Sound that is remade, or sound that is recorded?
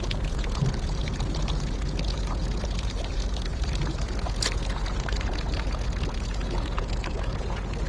remade